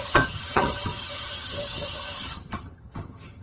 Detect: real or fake fake